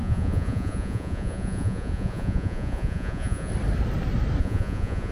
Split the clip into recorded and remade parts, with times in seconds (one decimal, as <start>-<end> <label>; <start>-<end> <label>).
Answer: 0.0-3.5 remade; 3.5-4.4 recorded; 4.4-5.1 remade